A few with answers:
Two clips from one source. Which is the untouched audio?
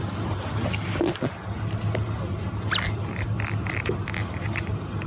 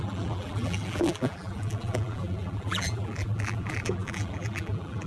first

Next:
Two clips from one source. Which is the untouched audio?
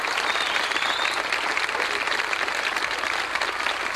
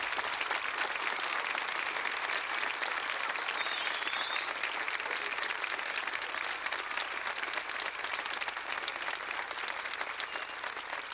second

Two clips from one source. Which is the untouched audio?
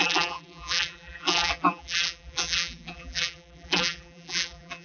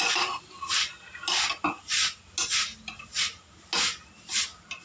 second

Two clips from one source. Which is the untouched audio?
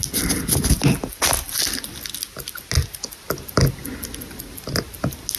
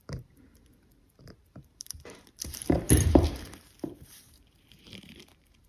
first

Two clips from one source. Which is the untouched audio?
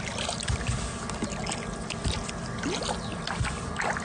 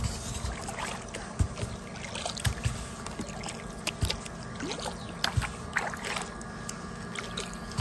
second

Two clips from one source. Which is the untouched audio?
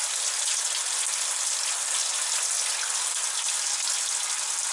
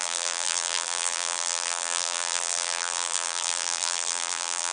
first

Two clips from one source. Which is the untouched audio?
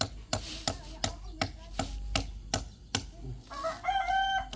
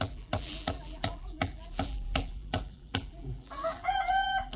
first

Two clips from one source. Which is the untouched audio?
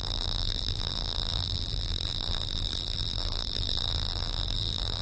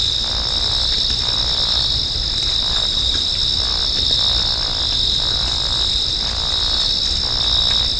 second